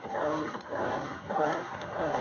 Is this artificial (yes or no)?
yes